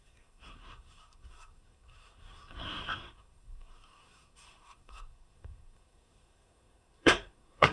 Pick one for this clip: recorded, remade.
remade